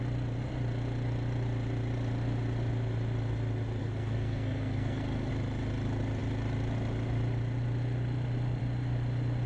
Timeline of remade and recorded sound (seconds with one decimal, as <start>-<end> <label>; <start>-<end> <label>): 0.0-3.8 recorded; 3.8-5.3 remade; 5.3-9.5 recorded